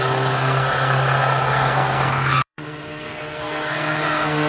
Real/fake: fake